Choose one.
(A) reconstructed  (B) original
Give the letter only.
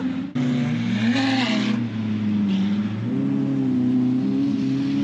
B